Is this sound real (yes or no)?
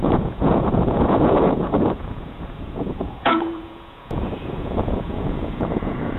no